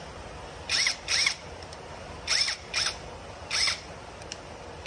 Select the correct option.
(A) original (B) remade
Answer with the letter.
A